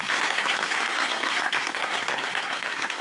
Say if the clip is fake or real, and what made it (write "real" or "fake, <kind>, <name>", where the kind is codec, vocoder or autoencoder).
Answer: fake, codec, SNAC